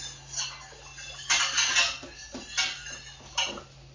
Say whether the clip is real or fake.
real